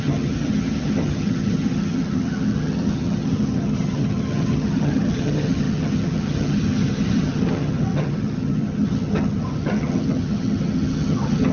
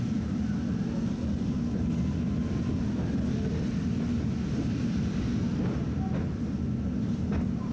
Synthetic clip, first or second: first